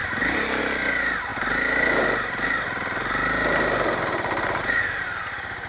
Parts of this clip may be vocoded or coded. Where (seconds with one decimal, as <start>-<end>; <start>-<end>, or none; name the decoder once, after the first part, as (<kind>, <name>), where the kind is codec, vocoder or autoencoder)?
none